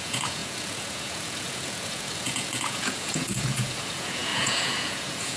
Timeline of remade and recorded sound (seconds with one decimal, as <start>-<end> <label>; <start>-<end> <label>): 0.0-5.4 remade

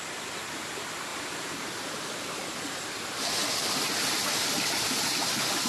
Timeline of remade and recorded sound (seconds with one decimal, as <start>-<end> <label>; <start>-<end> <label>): 0.0-1.1 recorded; 1.1-4.5 remade; 4.5-5.7 recorded

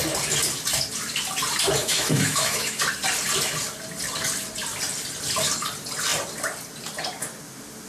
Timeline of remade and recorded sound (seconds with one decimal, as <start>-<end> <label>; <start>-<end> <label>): 0.0-1.8 recorded; 1.8-2.8 remade; 2.8-7.9 recorded

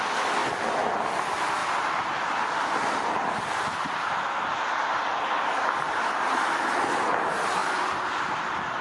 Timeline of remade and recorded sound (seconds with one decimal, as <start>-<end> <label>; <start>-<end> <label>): 0.0-8.8 recorded

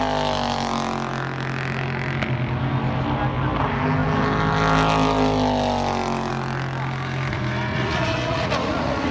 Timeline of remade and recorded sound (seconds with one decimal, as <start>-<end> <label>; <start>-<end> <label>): 0.0-7.7 recorded; 7.7-9.1 remade